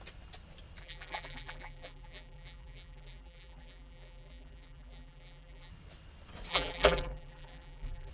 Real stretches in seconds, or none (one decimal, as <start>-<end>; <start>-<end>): 0.0-0.8; 5.7-6.5